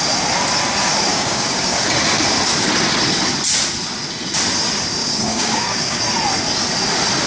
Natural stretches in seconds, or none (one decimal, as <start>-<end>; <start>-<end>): 0.0-1.1; 1.9-5.0; 6.0-7.3